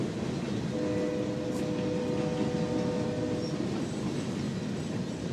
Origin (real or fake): real